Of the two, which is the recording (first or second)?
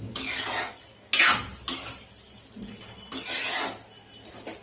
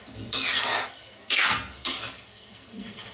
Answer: first